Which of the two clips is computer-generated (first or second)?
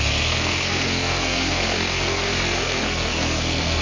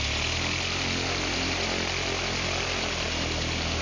first